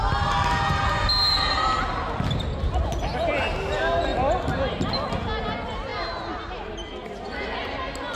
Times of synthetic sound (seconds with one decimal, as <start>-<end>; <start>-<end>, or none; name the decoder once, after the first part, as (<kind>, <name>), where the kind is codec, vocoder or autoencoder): none